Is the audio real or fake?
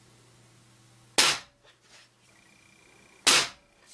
real